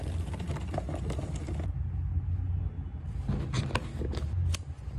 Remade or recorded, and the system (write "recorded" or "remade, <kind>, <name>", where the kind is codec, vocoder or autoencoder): recorded